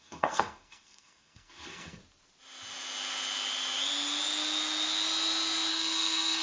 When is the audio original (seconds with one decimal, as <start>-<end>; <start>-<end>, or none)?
2.0-5.7